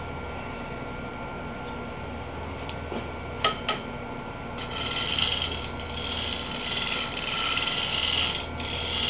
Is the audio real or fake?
fake